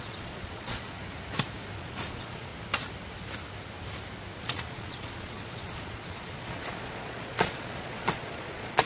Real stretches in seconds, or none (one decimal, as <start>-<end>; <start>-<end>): 1.0-1.8; 2.5-4.4